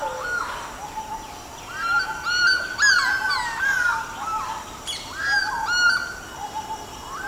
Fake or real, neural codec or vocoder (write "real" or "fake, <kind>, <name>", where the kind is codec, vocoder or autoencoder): real